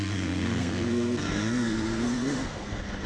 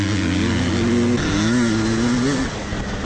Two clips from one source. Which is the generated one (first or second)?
first